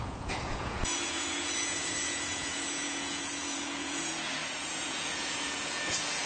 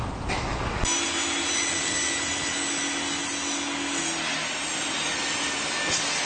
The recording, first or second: second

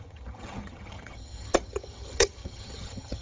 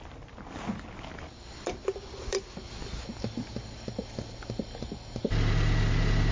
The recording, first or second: second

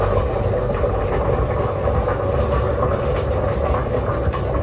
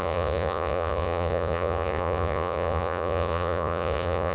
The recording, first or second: first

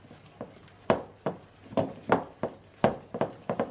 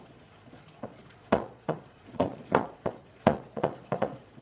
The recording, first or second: first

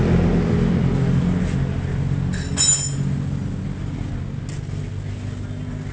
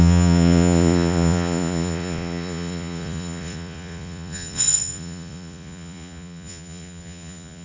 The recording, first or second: first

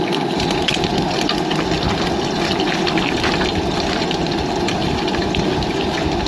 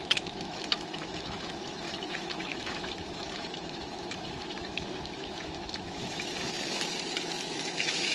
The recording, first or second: first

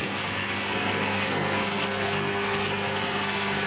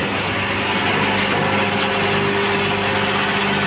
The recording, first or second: second